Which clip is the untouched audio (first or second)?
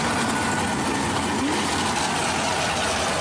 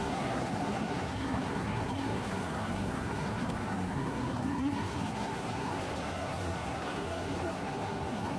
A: first